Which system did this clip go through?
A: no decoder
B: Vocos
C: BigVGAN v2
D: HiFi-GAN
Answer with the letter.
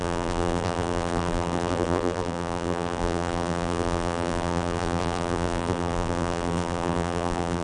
C